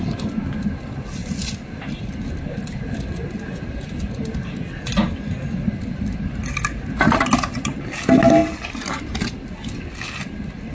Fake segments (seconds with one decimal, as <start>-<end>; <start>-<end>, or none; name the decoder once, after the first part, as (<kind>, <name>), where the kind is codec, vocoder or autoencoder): none